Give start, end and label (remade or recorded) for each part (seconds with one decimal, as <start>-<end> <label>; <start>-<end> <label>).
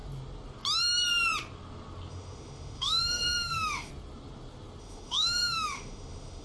0.0-2.1 recorded; 2.1-3.9 remade; 3.9-4.8 recorded; 4.8-6.4 remade